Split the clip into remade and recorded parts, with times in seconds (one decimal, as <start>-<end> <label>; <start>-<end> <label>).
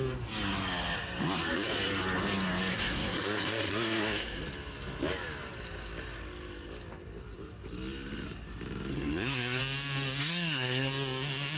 0.0-2.7 recorded; 2.7-4.4 remade; 4.4-8.9 recorded; 8.9-9.6 remade; 9.6-10.2 recorded; 10.2-10.9 remade; 10.9-11.6 recorded